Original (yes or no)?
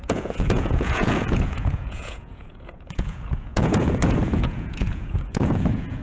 no